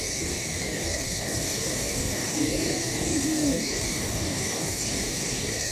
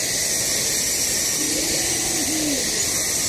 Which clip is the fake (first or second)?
first